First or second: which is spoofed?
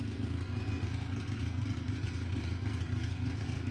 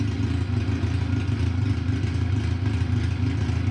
first